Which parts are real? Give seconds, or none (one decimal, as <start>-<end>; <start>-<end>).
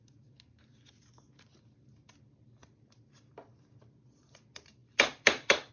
0.0-4.8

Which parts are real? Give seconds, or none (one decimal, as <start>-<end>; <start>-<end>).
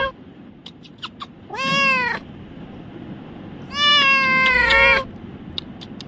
0.0-6.1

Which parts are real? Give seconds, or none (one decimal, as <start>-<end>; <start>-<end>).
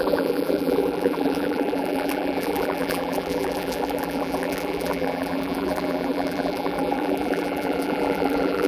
none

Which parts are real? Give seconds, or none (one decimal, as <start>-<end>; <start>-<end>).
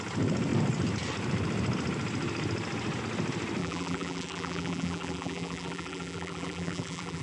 0.0-3.6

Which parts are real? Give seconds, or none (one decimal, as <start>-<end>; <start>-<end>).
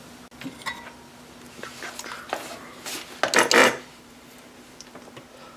0.0-3.6